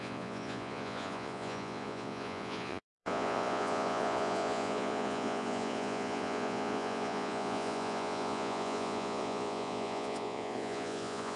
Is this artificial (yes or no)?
yes